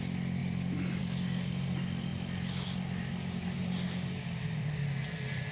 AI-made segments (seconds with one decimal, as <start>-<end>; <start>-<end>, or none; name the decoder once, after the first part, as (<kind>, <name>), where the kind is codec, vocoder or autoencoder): none